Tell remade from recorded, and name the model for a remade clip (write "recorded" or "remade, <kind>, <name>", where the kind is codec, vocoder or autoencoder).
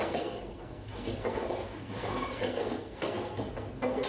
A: remade, codec, SNAC